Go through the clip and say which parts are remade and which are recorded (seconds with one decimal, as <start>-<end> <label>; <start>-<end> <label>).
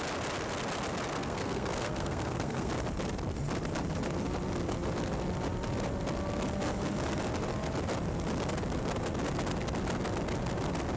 0.0-1.1 recorded; 1.1-2.7 remade; 2.7-11.0 recorded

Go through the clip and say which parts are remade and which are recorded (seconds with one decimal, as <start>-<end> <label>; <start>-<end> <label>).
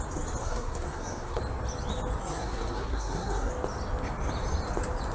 0.0-0.4 recorded; 0.4-1.4 remade; 1.4-2.2 recorded; 2.2-3.5 remade; 3.5-5.1 recorded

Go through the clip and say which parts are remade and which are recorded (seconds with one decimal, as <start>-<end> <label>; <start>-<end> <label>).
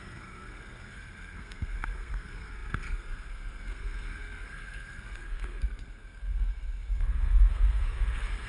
0.0-8.5 remade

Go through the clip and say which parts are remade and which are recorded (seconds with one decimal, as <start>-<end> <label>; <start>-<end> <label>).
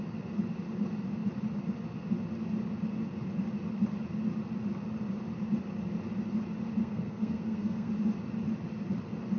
0.0-6.8 recorded; 6.8-7.9 remade; 7.9-9.4 recorded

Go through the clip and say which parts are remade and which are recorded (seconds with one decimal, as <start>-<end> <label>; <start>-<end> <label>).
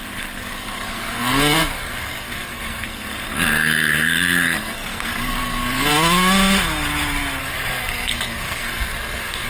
0.0-5.9 remade; 5.9-7.4 recorded; 7.4-9.5 remade